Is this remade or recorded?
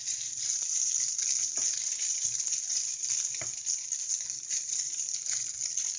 recorded